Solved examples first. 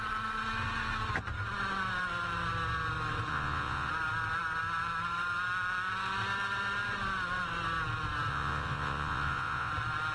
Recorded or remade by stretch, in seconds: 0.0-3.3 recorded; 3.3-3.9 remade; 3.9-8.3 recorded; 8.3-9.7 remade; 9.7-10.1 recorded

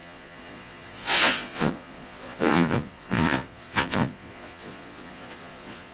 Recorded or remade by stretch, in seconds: 0.0-5.9 remade

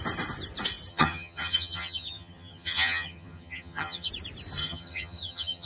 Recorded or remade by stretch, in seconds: 0.0-0.9 recorded; 0.9-4.1 remade; 4.1-4.6 recorded; 4.6-5.7 remade

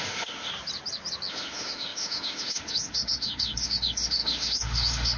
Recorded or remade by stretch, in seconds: 0.0-0.5 remade; 0.5-1.3 recorded; 1.3-5.2 remade